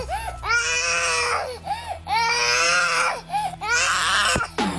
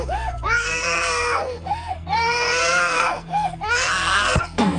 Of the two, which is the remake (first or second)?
second